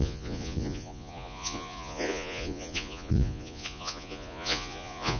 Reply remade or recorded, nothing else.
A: remade